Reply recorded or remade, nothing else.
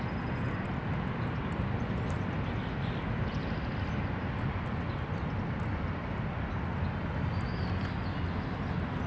recorded